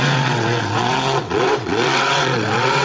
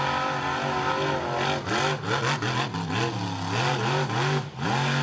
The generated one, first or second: first